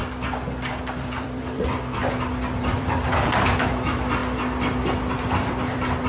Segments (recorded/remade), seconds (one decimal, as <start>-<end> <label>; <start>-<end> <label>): 0.0-0.7 recorded; 0.7-2.0 remade; 2.0-2.6 recorded; 2.6-4.2 remade; 4.2-5.0 recorded; 5.0-6.1 remade